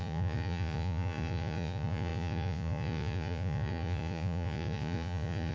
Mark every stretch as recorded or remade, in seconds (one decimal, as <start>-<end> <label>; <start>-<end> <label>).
0.0-5.5 remade